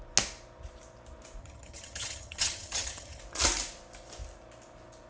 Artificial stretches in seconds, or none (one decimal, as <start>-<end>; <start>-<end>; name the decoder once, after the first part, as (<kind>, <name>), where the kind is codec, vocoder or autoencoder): 1.4-3.2 (vocoder, HiFi-GAN)